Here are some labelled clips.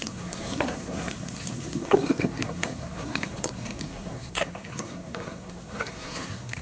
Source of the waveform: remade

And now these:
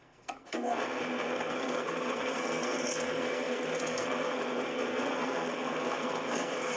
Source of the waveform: remade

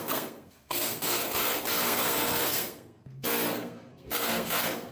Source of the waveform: remade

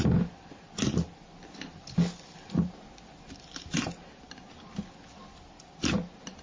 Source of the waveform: recorded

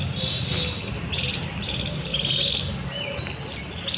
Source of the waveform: recorded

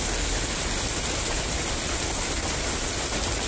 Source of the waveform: recorded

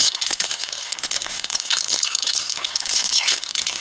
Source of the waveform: remade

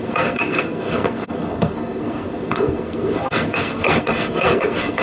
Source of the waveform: remade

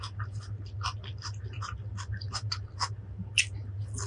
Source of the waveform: recorded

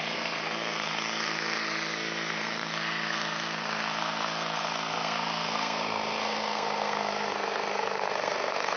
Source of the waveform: remade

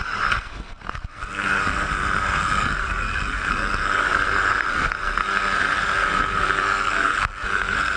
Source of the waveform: remade